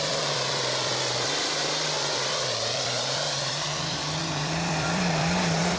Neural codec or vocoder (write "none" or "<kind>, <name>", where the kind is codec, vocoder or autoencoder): vocoder, BigVGAN v2